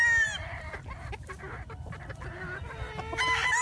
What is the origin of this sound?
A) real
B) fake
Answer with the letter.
A